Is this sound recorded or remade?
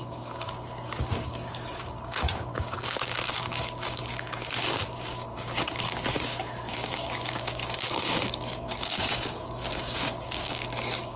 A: remade